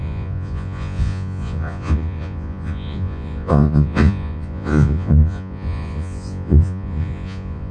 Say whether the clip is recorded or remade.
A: remade